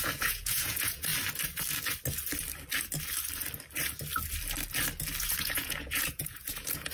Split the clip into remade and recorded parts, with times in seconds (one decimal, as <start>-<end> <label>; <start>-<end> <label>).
0.0-1.1 remade; 1.1-5.2 recorded; 5.2-6.9 remade